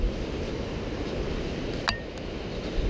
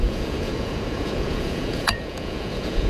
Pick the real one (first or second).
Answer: first